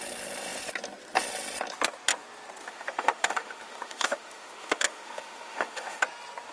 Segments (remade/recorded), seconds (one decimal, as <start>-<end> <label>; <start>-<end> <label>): 0.0-2.6 recorded; 2.6-6.0 remade; 6.0-6.5 recorded